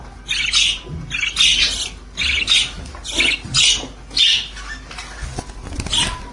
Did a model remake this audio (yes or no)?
no